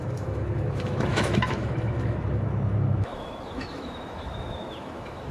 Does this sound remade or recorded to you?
remade